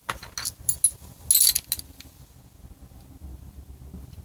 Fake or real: real